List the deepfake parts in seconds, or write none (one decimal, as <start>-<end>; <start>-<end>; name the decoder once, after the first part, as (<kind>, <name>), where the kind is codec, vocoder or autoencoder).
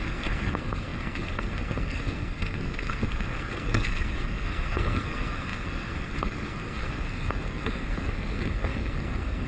0.0-9.5 (codec, SNAC)